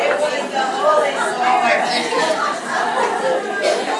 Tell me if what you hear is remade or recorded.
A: recorded